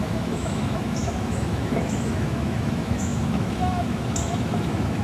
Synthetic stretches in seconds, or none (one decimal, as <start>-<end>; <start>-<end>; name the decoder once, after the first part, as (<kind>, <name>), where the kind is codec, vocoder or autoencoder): 0.0-5.0 (autoencoder, DAC-VAE)